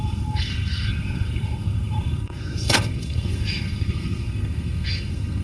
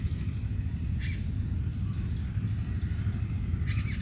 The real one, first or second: second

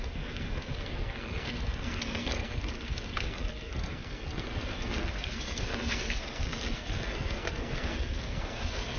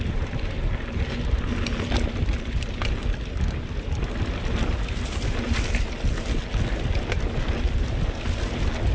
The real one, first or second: second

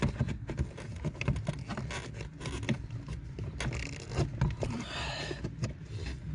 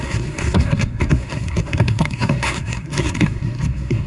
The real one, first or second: first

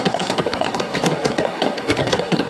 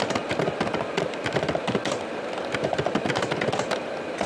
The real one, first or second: second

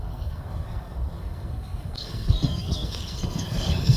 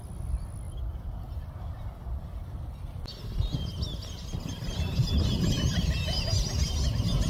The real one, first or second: second